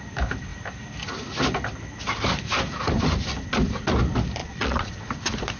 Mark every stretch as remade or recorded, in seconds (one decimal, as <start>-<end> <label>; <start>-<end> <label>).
0.0-4.4 recorded; 4.4-4.9 remade; 4.9-5.6 recorded